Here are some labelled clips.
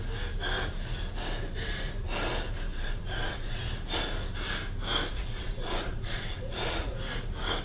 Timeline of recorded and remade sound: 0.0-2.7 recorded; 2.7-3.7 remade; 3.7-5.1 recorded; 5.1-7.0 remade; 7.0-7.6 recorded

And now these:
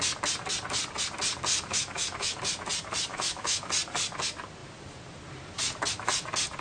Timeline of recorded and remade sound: 0.0-1.5 recorded; 1.5-2.4 remade; 2.4-3.1 recorded; 3.1-3.7 remade; 3.7-6.6 recorded

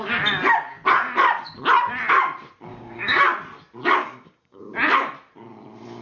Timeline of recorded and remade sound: 0.0-2.7 recorded; 2.7-3.3 remade; 3.3-4.0 recorded; 4.0-4.6 remade; 4.6-6.0 recorded

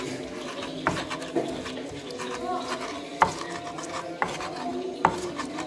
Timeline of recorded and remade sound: 0.0-5.7 recorded

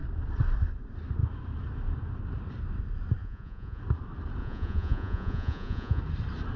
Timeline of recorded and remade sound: 0.0-3.2 recorded; 3.2-3.8 remade; 3.8-4.4 recorded; 4.4-6.0 remade; 6.0-6.6 recorded

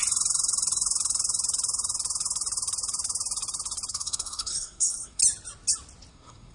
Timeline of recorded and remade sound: 0.0-3.9 recorded; 3.9-5.2 remade; 5.2-6.1 recorded; 6.1-6.5 remade